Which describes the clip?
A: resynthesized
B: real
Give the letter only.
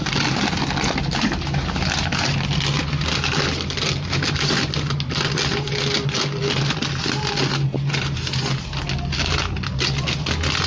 B